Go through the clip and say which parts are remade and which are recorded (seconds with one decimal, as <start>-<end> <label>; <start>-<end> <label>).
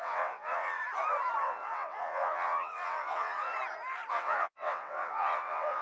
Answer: 0.0-0.8 remade; 0.8-1.4 recorded; 1.4-3.5 remade; 3.5-4.1 recorded; 4.1-5.8 remade